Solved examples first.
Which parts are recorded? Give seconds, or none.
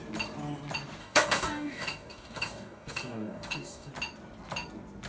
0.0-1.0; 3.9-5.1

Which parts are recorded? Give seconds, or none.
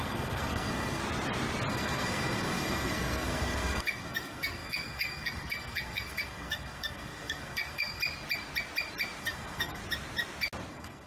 1.0-1.7; 8.0-9.2; 9.8-10.7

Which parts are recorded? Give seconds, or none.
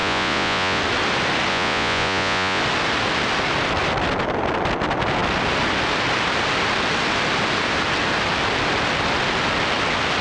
0.8-1.5; 2.6-10.2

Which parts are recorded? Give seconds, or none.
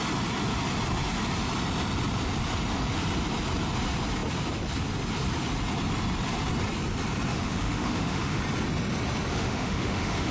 0.0-7.3; 8.4-9.3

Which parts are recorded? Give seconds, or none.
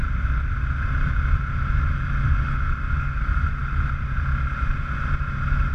0.0-5.7